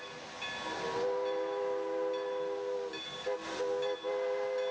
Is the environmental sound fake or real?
real